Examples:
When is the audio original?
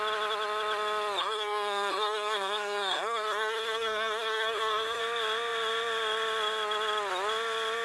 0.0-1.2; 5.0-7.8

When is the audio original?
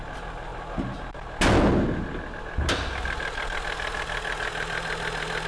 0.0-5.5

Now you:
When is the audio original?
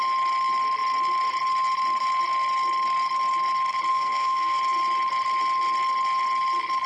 0.0-3.9; 4.6-6.9